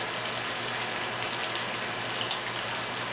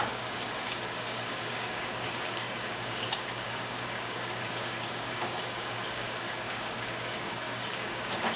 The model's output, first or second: second